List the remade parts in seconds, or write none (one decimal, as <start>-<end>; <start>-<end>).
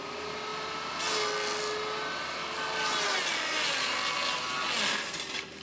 none